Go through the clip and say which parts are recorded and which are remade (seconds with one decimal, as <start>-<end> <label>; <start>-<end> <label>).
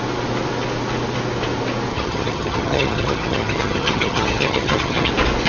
0.0-1.9 recorded; 1.9-5.1 remade; 5.1-5.5 recorded